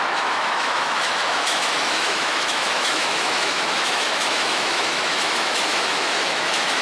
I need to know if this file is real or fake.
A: fake